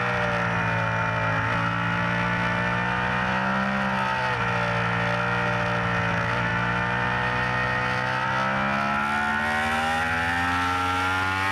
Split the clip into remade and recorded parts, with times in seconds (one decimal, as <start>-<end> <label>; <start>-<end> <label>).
0.0-11.5 recorded